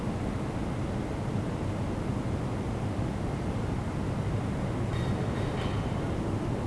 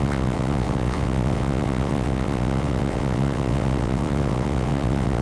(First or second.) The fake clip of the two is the second